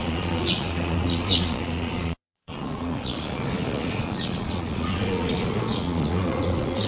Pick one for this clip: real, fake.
fake